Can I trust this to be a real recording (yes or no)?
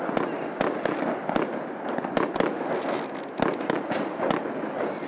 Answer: yes